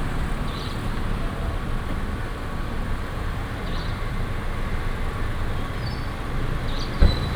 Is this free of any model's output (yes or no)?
yes